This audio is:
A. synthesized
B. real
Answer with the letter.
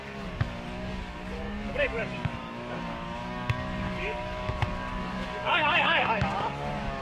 A